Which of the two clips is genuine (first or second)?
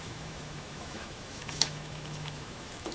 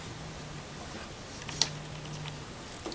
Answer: second